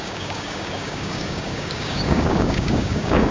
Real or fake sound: fake